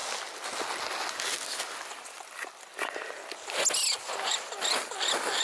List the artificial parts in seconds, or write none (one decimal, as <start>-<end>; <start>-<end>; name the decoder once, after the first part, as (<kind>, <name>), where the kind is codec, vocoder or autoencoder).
none

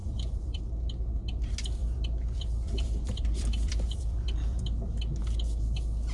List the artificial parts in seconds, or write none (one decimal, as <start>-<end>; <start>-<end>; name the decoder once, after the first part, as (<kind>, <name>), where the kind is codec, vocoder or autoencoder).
0.0-0.6 (vocoder, BigVGAN v2); 1.8-5.0

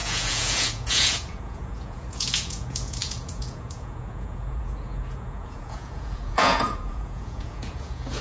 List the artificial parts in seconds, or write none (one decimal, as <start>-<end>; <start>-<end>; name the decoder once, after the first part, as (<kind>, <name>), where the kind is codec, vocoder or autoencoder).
0.0-8.2 (vocoder, Vocos)

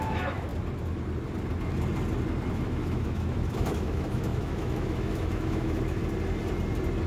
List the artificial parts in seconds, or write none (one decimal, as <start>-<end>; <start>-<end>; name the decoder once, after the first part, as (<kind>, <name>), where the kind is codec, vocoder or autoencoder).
0.0-0.5 (autoencoder, DAC-VAE); 2.5-6.0

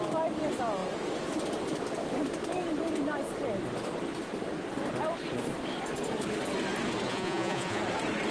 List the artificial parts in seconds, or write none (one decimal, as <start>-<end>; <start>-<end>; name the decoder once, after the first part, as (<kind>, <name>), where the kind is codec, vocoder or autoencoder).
7.1-7.8 (vocoder, Vocos)

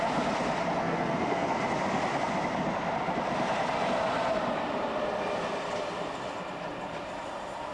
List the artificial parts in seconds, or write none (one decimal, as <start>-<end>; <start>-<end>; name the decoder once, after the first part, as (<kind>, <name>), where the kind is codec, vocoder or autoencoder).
0.8-1.6 (codec, SNAC)